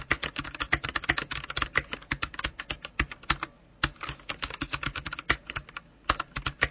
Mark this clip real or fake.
real